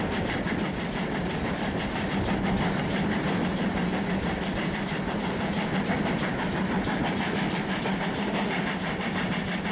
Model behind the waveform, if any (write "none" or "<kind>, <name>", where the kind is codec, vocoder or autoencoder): vocoder, BigVGAN v2